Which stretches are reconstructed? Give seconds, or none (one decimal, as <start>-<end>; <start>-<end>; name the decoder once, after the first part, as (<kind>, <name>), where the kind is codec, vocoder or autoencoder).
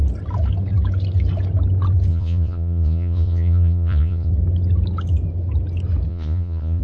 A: 2.1-4.3 (vocoder, Vocos); 6.1-6.8